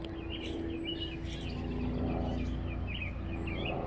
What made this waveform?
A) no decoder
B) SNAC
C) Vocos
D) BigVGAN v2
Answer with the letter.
A